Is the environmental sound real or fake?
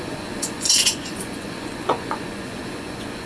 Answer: fake